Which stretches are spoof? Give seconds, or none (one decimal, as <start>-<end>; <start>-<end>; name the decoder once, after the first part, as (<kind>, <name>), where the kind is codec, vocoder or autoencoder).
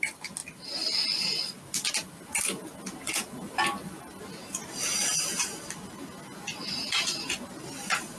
none